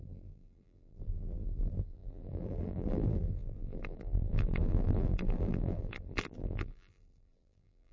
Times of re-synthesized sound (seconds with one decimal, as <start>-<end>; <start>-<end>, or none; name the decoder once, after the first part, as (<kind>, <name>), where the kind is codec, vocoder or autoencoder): 0.0-7.9 (vocoder, BigVGAN v2)